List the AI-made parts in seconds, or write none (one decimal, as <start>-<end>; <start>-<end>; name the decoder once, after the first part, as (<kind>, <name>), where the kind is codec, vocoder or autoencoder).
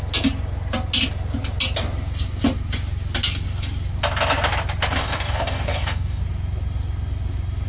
5.0-6.2 (codec, DAC)